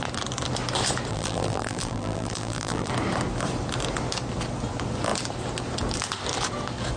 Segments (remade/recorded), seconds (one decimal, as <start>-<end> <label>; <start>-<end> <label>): 0.0-1.1 recorded; 1.1-2.9 remade; 2.9-7.0 recorded